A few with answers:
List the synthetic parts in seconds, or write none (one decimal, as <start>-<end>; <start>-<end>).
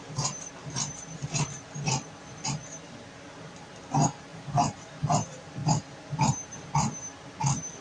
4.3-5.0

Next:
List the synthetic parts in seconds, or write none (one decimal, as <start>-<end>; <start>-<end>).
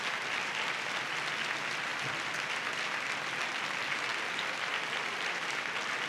none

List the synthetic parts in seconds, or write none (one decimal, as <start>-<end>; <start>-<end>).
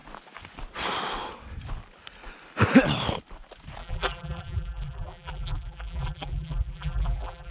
3.8-7.5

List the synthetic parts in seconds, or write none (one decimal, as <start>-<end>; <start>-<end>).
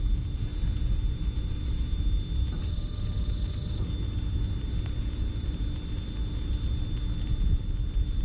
none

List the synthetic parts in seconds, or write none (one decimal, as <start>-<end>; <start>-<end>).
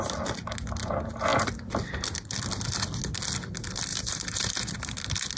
3.9-4.8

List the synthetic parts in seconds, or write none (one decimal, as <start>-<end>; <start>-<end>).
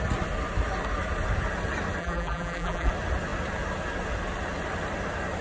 2.0-2.9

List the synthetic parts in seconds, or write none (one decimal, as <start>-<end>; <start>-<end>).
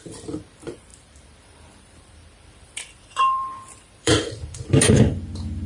0.0-5.7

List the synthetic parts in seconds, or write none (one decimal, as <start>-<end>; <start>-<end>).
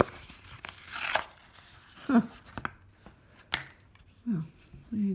0.0-1.4; 4.5-5.1